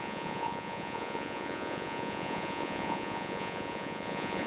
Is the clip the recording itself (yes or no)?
no